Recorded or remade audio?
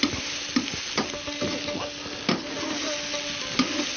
recorded